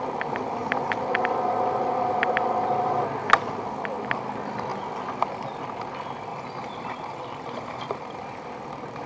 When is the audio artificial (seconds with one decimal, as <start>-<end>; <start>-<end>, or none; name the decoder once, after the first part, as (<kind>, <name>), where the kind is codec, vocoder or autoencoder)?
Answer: 6.3-8.2 (vocoder, BigVGAN v2)

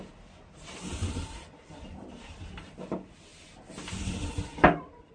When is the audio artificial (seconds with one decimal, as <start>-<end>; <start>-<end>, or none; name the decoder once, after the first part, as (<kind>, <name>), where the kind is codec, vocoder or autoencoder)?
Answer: 1.0-1.8 (vocoder, BigVGAN v2); 3.3-5.1

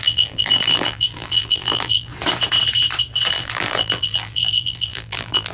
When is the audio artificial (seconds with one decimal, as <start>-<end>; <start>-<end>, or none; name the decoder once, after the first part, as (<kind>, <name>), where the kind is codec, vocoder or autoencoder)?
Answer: 0.0-2.1 (vocoder, BigVGAN v2); 3.3-5.5